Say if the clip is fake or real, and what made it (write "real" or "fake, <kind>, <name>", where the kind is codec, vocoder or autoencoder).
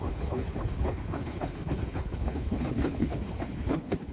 fake, codec, HILCodec